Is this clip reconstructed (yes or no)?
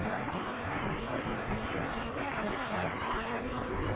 yes